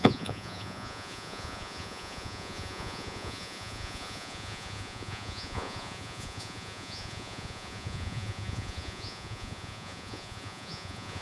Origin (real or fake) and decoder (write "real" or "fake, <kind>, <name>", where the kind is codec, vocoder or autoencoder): fake, vocoder, Vocos